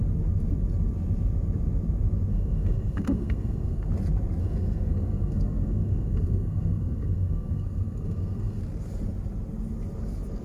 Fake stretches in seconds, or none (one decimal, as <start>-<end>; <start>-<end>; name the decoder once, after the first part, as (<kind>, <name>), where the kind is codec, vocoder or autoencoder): 2.3-3.9 (codec, SNAC); 4.4-8.6